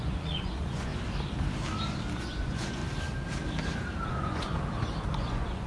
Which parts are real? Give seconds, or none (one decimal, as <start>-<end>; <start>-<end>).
0.9-2.2; 2.8-4.1; 4.5-5.1